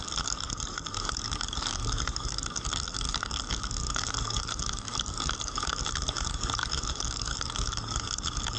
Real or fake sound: fake